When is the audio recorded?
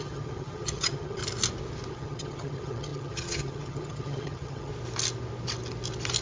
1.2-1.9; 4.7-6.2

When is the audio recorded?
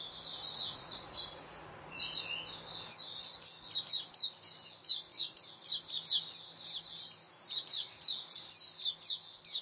0.0-0.4; 2.0-5.1; 5.6-7.2; 8.4-9.6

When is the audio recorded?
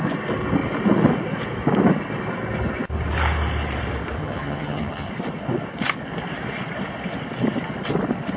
0.0-4.2; 5.1-8.4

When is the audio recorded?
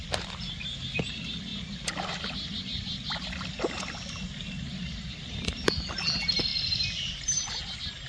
0.0-8.1